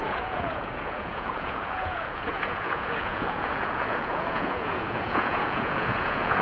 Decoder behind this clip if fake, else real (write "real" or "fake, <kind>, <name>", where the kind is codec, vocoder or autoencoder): fake, vocoder, Vocos